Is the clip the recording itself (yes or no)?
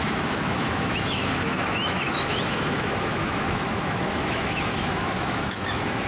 no